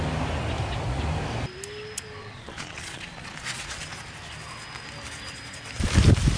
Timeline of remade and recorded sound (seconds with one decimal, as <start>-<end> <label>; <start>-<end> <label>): 0.0-2.2 recorded; 2.2-4.0 remade; 4.0-6.4 recorded